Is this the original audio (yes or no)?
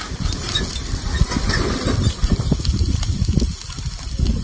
yes